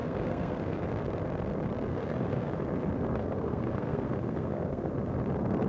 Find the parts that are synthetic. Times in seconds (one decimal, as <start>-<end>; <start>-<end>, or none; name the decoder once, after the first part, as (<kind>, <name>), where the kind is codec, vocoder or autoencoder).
0.0-0.8 (codec, SNAC); 1.9-2.6; 3.2-4.9